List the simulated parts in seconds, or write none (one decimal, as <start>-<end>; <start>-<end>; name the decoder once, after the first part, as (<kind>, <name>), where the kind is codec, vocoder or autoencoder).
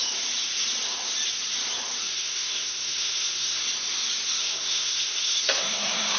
2.1-3.6 (codec, SNAC); 4.4-6.2